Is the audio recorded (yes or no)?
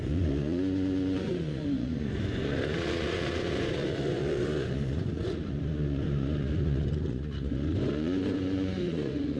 no